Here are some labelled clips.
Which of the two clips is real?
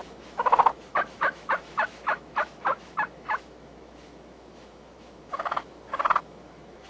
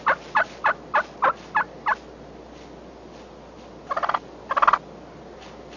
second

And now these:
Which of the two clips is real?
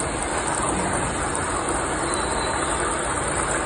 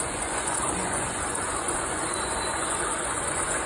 first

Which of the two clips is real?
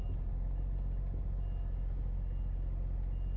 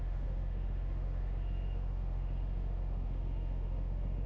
first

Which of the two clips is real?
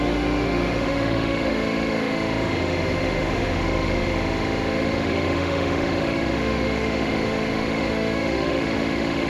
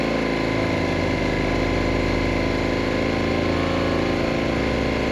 second